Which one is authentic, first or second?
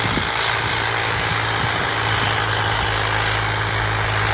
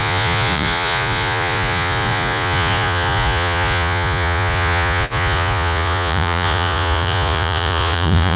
first